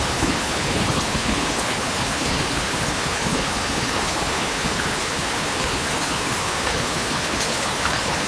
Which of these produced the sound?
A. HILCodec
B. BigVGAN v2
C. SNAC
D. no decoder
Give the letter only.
A